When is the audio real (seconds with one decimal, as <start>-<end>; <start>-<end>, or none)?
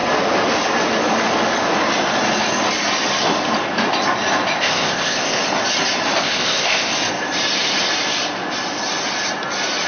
0.0-4.6; 5.4-6.2; 6.9-9.9